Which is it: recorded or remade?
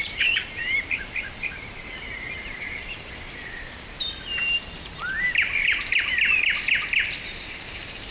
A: remade